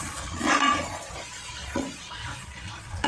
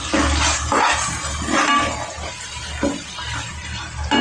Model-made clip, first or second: first